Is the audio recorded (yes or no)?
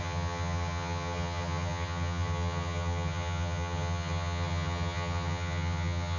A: no